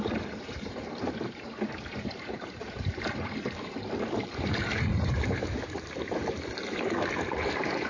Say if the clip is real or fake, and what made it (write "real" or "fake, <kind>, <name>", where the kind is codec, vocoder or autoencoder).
fake, vocoder, BigVGAN v2